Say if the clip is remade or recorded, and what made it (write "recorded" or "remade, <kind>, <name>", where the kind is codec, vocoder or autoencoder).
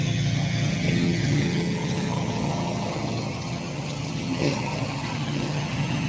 remade, vocoder, HiFi-GAN